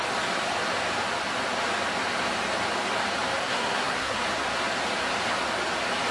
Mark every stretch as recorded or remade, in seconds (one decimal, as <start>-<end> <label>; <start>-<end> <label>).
0.0-3.4 recorded; 3.4-4.2 remade; 4.2-6.1 recorded